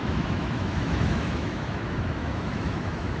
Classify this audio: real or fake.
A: fake